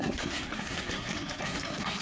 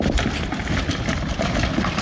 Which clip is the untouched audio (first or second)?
second